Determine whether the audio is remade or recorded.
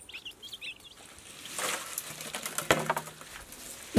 recorded